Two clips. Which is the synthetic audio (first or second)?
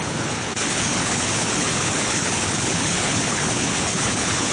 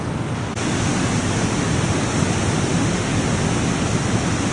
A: first